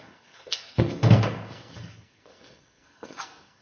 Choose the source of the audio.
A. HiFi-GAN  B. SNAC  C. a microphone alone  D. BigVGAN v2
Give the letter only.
B